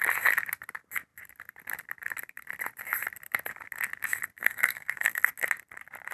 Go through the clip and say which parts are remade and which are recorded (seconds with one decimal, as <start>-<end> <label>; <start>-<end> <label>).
0.0-4.4 recorded; 4.4-5.2 remade; 5.2-6.1 recorded